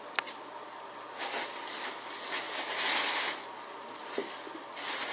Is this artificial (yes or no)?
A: no